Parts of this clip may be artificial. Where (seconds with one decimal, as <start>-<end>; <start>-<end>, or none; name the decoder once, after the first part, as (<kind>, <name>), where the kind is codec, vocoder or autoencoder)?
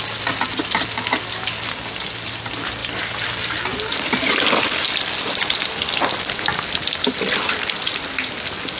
none